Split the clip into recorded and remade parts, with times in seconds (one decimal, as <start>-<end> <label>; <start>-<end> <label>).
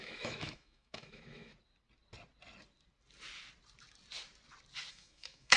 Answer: 0.0-1.5 remade; 1.5-4.9 recorded; 4.9-5.6 remade